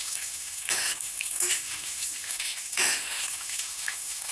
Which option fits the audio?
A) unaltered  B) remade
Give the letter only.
B